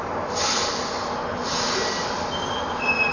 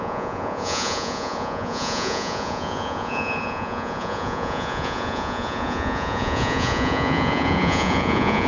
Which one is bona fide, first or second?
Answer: first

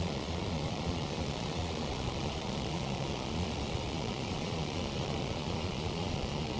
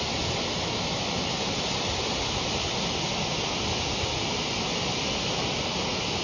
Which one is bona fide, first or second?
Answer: second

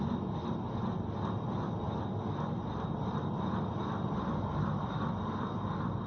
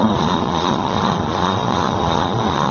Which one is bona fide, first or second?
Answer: first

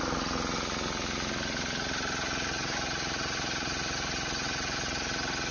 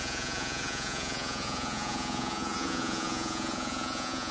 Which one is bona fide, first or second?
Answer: first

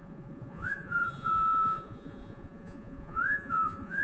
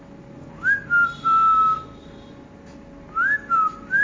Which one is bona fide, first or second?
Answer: second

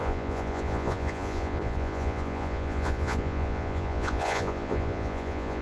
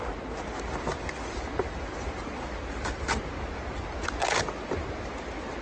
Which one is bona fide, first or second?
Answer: second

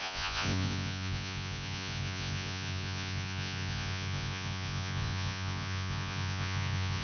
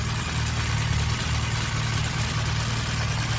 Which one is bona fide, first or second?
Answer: second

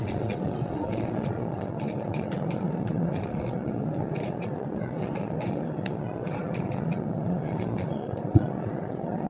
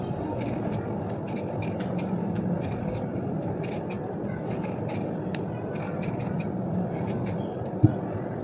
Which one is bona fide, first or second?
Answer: second